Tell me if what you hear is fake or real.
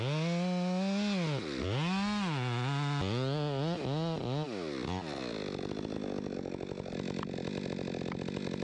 real